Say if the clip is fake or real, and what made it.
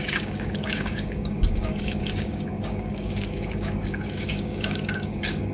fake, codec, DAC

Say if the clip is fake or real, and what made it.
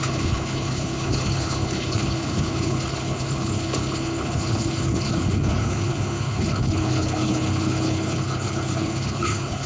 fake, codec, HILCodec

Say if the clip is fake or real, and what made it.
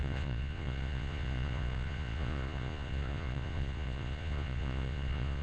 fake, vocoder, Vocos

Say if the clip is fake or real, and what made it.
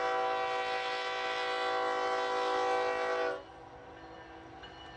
real